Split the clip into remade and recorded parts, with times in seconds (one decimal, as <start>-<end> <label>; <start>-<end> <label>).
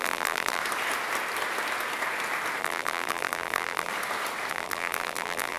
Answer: 0.0-0.6 remade; 0.6-2.6 recorded; 2.6-3.9 remade; 3.9-4.5 recorded; 4.5-5.6 remade